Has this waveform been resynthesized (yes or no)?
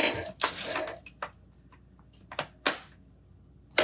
no